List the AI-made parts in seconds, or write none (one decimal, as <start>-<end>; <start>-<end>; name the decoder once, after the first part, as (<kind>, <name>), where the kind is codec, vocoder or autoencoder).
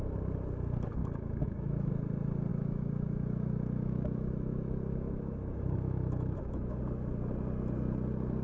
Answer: 1.0-1.9 (autoencoder, DAC-VAE); 2.5-6.8